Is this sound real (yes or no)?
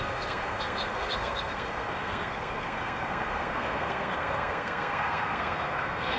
no